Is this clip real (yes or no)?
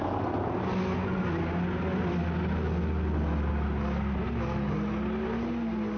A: yes